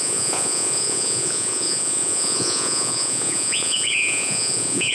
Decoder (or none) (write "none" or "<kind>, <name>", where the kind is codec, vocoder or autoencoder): vocoder, Vocos